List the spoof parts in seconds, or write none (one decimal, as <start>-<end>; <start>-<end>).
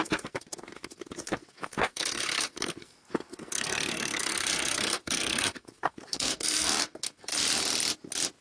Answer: 0.0-7.3